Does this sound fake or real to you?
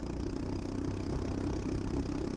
real